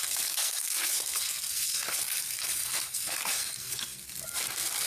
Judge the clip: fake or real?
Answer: fake